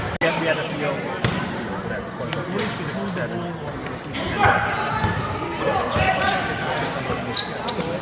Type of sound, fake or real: real